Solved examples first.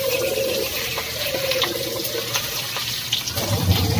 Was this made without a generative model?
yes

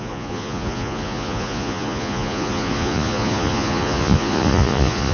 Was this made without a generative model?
no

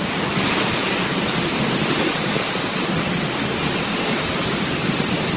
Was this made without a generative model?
yes